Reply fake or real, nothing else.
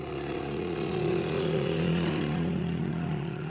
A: fake